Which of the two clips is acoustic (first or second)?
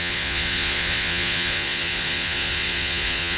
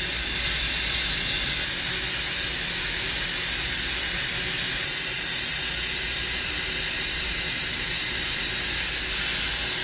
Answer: second